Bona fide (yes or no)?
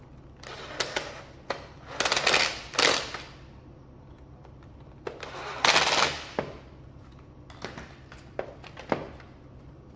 yes